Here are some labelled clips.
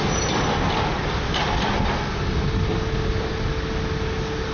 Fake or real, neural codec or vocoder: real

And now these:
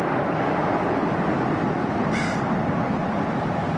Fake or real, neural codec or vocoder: fake, vocoder, BigVGAN v2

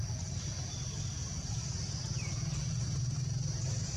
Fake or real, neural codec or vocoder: real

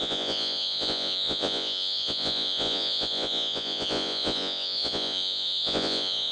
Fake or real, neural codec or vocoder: fake, vocoder, Vocos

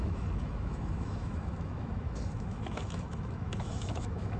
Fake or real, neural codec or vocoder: fake, autoencoder, DAC-VAE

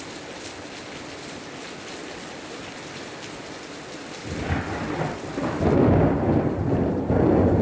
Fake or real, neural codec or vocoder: fake, vocoder, BigVGAN v2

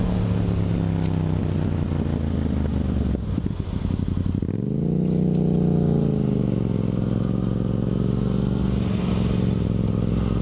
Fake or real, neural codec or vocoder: real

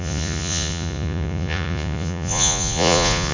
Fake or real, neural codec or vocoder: fake, vocoder, Vocos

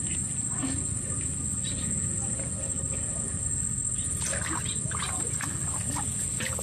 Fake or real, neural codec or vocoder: real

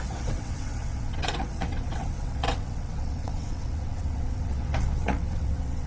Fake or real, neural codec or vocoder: fake, vocoder, WaveNeXt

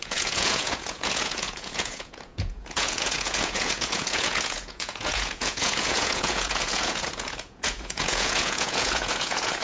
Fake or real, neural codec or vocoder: fake, vocoder, Vocos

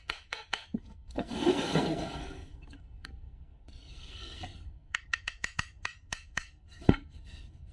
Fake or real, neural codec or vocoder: fake, codec, SNAC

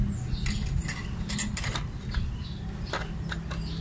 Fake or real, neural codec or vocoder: real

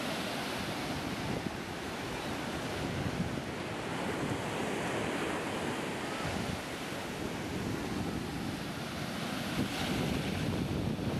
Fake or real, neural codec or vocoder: real